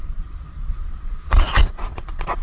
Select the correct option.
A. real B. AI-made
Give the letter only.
B